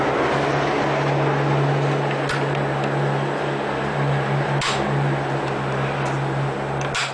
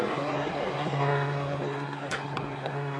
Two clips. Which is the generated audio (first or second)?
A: second